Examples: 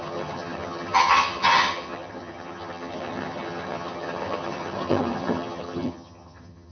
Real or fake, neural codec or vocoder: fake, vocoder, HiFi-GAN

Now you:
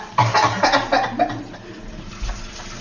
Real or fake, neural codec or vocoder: real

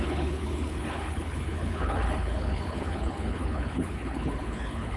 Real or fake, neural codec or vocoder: fake, codec, HILCodec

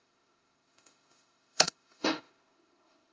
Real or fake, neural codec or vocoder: fake, autoencoder, DAC-VAE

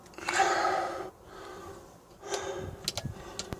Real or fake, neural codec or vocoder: real